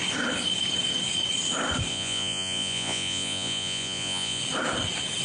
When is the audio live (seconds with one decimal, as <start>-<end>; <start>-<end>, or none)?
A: 0.0-1.9; 4.4-5.2